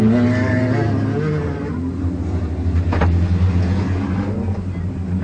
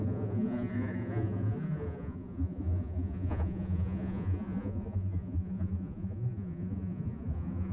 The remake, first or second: second